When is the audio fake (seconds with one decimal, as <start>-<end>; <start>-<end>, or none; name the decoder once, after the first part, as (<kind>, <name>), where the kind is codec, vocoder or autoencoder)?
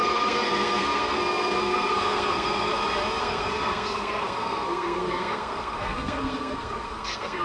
0.0-2.7 (codec, SNAC); 3.2-7.4